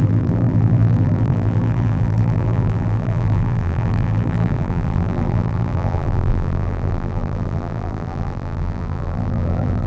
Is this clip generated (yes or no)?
yes